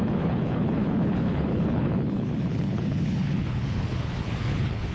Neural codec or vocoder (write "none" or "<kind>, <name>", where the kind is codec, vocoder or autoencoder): codec, HILCodec